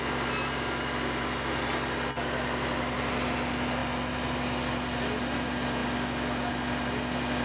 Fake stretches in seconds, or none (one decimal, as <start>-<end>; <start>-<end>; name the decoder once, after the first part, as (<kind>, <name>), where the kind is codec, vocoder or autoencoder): none